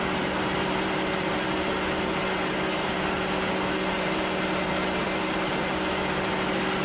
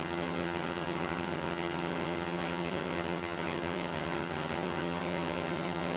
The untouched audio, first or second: first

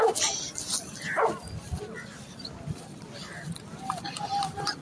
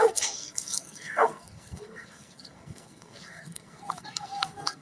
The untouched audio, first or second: first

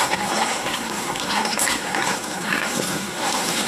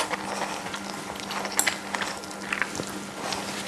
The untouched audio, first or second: second